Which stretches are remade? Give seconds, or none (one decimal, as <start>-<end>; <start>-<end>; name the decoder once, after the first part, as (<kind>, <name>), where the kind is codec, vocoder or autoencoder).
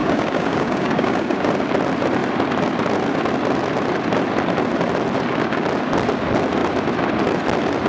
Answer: 0.0-1.5 (codec, DAC)